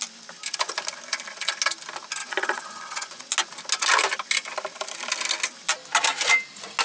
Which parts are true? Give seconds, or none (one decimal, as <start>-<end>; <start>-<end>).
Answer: 0.0-2.2; 3.2-6.8